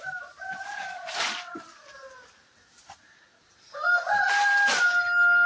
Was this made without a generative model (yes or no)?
yes